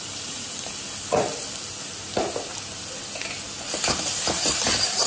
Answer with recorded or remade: recorded